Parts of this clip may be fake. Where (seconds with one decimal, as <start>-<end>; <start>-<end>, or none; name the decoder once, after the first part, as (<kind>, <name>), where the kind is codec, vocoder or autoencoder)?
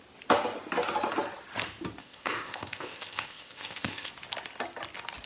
2.0-4.1 (codec, ZipCodec)